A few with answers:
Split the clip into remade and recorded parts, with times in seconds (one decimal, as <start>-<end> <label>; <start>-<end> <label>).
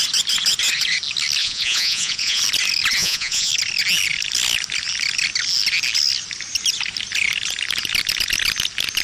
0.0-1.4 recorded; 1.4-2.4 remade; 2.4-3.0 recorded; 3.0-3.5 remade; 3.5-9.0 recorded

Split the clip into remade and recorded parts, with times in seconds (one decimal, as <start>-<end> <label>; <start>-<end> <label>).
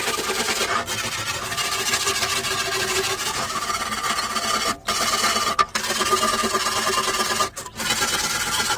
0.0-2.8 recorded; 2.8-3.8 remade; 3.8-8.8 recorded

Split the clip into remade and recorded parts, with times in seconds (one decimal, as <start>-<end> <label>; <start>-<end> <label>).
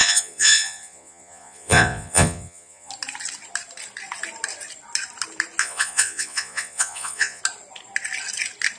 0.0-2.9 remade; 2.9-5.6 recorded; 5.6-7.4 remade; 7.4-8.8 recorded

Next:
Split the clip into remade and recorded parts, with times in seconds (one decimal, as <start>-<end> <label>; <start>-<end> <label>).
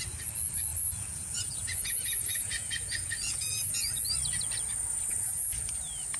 0.0-0.7 recorded; 0.7-3.9 remade; 3.9-5.1 recorded; 5.1-5.6 remade; 5.6-6.2 recorded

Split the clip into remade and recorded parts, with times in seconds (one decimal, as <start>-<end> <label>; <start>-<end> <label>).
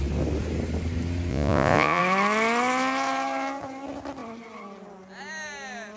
0.0-1.3 recorded; 1.3-2.0 remade; 2.0-6.0 recorded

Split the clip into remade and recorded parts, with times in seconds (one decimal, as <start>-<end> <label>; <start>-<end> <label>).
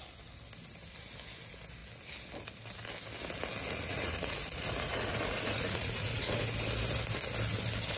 0.0-3.9 recorded; 3.9-6.4 remade; 6.4-8.0 recorded